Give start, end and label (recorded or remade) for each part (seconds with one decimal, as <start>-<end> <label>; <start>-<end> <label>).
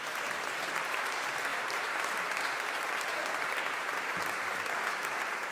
0.0-3.1 remade; 3.1-3.8 recorded; 3.8-5.5 remade